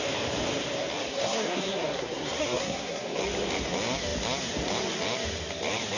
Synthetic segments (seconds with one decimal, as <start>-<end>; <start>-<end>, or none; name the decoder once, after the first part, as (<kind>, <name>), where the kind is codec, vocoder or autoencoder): 1.1-3.2 (codec, SNAC)